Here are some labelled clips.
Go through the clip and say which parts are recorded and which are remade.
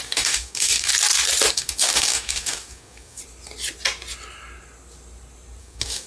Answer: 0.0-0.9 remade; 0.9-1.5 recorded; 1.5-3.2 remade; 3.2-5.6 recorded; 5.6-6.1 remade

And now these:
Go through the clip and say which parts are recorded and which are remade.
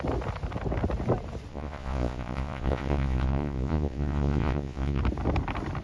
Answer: 0.0-1.5 recorded; 1.5-5.0 remade; 5.0-5.8 recorded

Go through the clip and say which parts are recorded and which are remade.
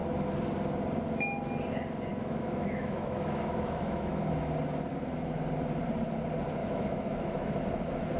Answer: 0.0-2.1 recorded; 2.1-4.2 remade; 4.2-6.6 recorded; 6.6-7.6 remade; 7.6-8.2 recorded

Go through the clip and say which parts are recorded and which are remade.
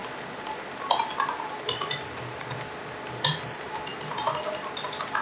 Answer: 0.0-5.2 recorded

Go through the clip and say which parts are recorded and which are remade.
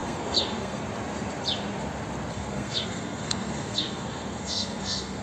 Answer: 0.0-0.8 remade; 0.8-2.3 recorded; 2.3-5.2 remade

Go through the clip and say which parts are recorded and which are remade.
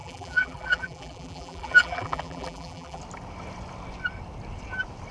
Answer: 0.0-3.0 remade; 3.0-5.1 recorded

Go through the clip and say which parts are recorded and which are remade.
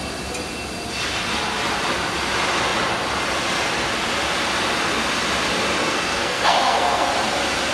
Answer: 0.0-5.8 recorded; 5.8-7.1 remade; 7.1-7.7 recorded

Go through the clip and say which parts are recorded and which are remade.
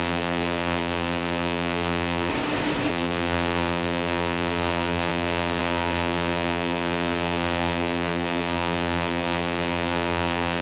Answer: 0.0-2.3 remade; 2.3-2.9 recorded; 2.9-10.6 remade